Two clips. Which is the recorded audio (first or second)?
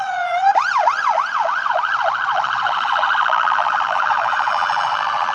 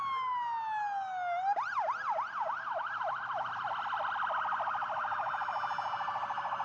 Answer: second